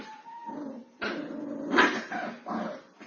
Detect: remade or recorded recorded